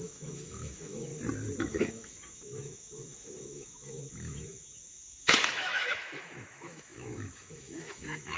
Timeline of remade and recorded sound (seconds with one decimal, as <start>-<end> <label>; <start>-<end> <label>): 0.0-1.1 remade; 1.1-1.6 recorded; 1.6-8.4 remade

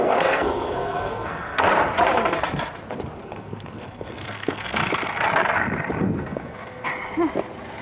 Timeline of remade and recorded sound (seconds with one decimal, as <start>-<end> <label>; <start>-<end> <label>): 0.0-1.7 remade; 1.7-3.2 recorded; 3.2-4.8 remade; 4.8-6.0 recorded; 6.0-6.9 remade; 6.9-7.8 recorded

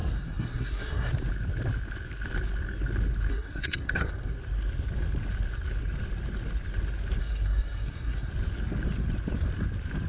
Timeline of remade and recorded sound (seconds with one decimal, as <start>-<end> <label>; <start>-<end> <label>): 0.0-1.1 remade; 1.1-3.3 recorded; 3.3-4.1 remade; 4.1-7.2 recorded; 7.2-8.3 remade; 8.3-10.1 recorded